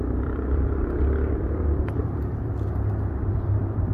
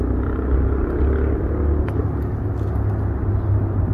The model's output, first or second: first